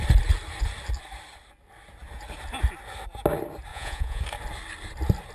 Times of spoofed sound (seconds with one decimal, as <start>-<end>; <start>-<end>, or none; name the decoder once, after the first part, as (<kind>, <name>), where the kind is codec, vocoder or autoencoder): 3.7-4.2 (vocoder, Vocos)